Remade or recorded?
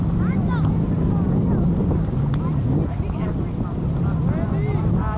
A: recorded